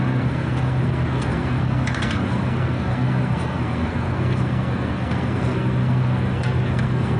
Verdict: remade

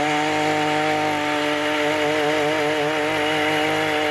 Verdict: recorded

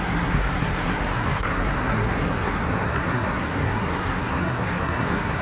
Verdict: remade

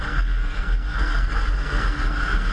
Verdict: remade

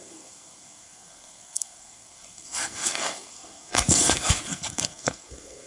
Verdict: remade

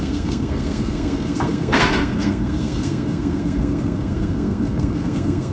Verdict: remade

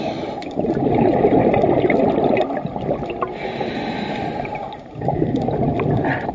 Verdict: recorded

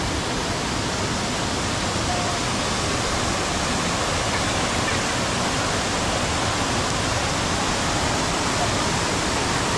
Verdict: recorded